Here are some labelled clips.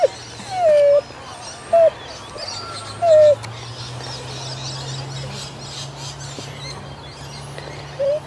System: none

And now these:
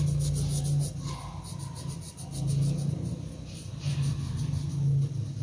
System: none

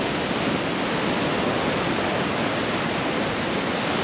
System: none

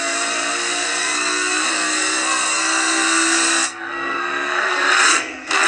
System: codec, SNAC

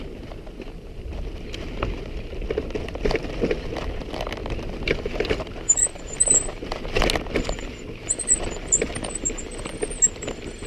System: none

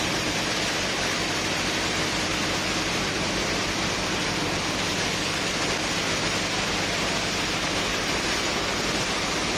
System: vocoder, BigVGAN v2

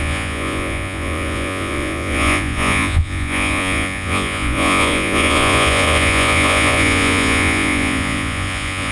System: vocoder, Vocos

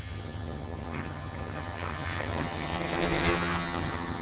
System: vocoder, HiFi-GAN